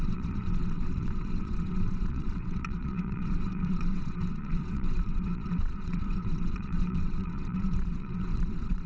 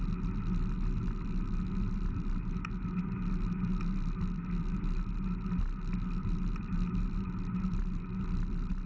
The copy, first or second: first